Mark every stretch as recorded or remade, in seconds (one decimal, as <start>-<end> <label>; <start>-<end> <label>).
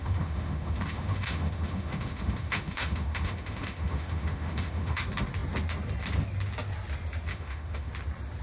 0.0-5.0 remade; 5.0-7.3 recorded; 7.3-7.9 remade; 7.9-8.4 recorded